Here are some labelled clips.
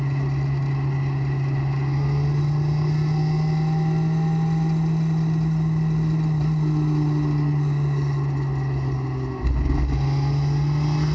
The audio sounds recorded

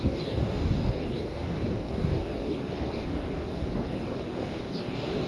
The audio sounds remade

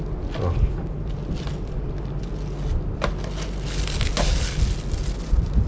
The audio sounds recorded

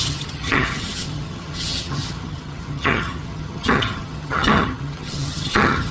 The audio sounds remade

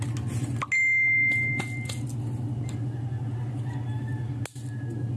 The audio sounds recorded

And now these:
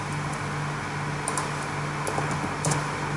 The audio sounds recorded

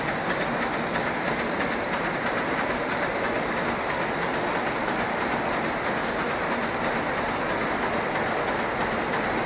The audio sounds recorded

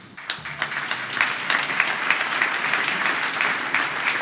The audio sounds recorded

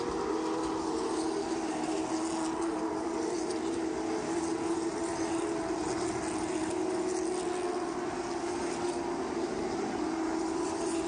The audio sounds recorded